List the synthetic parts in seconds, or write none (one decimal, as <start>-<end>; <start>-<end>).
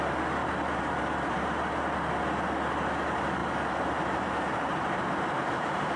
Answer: 0.4-1.4; 3.4-6.0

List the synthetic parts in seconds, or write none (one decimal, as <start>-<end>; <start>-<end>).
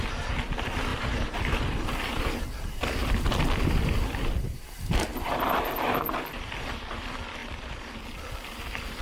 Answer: 0.9-1.6; 5.1-6.1; 7.4-8.0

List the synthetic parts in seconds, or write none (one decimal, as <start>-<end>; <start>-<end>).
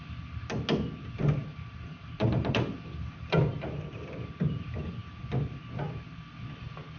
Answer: 1.4-3.4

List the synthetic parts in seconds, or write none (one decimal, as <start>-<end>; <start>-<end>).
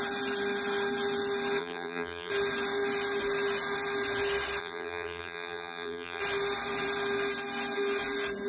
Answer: 1.6-2.3; 4.6-6.2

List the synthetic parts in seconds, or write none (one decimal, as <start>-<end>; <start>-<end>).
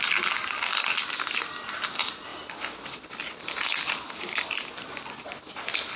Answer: none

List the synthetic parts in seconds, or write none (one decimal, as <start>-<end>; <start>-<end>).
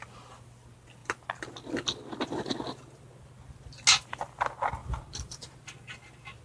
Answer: 4.8-5.6